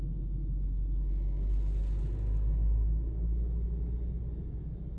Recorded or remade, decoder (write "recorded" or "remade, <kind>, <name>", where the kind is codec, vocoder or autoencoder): recorded